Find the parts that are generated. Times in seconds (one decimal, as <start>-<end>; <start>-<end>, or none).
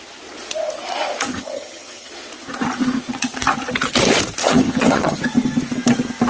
1.3-2.1; 4.4-5.2